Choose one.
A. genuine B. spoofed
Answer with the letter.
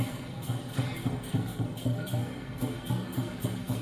B